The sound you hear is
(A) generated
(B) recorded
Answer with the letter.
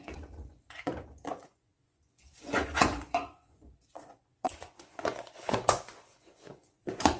A